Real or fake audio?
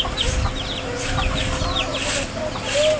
real